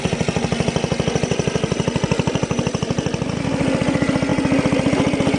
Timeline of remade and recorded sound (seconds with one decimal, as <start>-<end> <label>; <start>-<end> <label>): 0.0-5.4 recorded